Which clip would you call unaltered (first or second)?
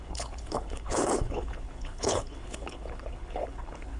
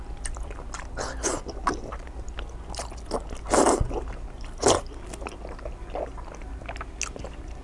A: second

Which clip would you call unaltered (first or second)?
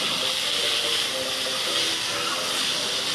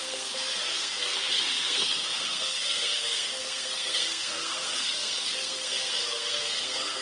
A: first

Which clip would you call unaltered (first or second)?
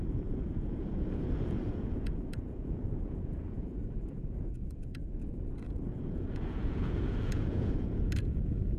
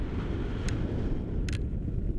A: second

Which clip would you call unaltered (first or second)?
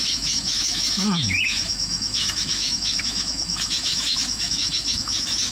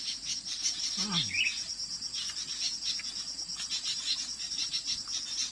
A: second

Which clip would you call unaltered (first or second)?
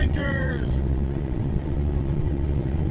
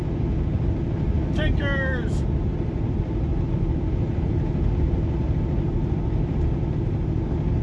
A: second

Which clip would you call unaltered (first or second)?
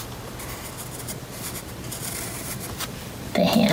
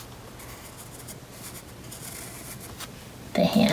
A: second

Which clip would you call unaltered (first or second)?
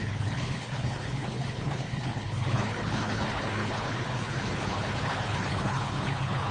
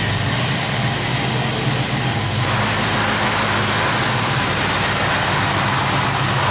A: second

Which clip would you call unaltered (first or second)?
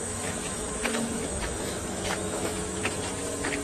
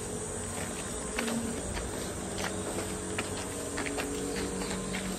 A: second